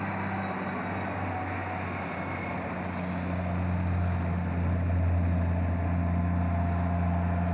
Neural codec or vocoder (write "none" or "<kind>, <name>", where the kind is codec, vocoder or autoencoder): none